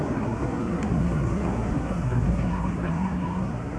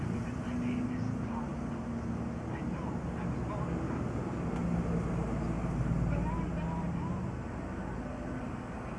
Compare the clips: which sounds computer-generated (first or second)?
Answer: first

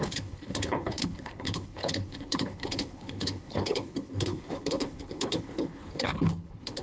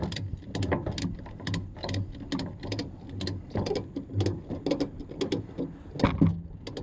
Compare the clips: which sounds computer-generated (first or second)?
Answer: first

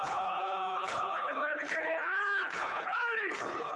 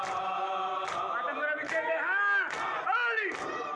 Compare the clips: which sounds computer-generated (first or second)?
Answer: first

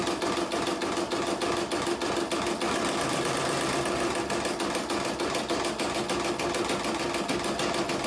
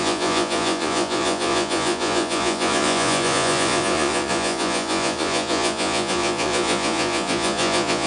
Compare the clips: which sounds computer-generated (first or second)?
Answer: second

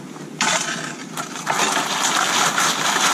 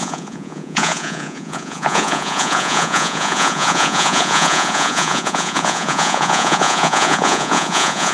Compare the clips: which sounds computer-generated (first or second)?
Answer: second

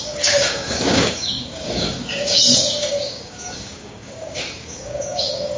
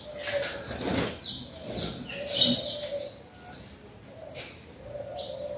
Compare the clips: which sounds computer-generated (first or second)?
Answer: first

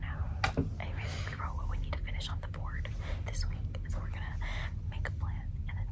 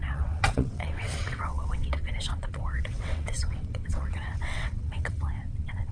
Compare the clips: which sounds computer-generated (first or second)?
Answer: second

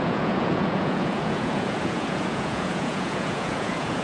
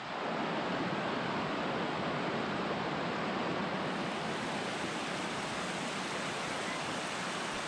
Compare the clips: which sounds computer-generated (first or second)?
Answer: first